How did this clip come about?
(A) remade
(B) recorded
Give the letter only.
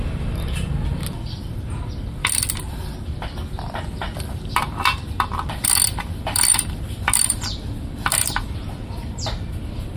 A